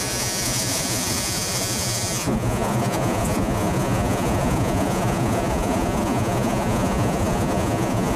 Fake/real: fake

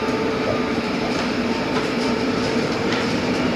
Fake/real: fake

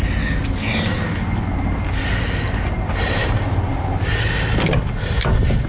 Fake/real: real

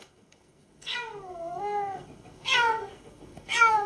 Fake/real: fake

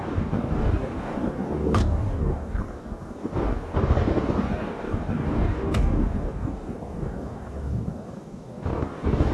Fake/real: fake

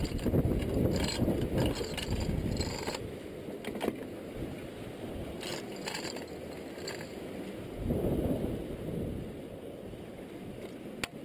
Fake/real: real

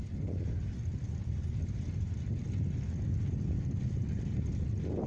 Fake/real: real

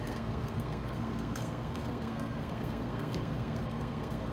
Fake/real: fake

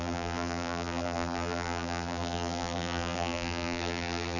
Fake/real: fake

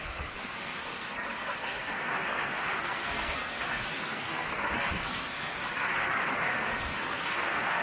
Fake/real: fake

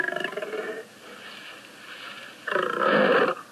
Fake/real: real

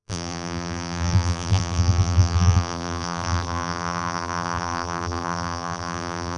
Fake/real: fake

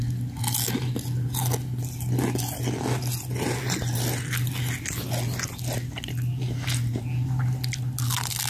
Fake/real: real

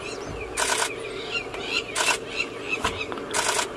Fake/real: real